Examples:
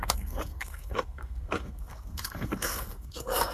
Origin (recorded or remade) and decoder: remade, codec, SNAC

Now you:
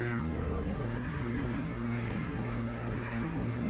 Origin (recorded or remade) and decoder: remade, codec, SNAC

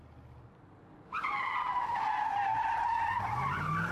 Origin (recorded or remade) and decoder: recorded